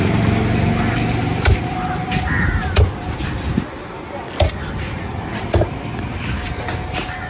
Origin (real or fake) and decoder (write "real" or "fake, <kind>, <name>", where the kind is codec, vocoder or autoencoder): real